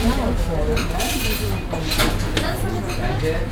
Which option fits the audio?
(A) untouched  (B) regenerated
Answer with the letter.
A